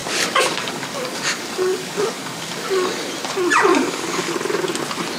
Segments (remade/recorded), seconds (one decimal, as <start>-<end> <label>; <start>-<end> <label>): 0.0-3.1 remade; 3.1-3.7 recorded; 3.7-4.3 remade; 4.3-5.2 recorded